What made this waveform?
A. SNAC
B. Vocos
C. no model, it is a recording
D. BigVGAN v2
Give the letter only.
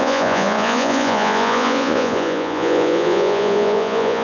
B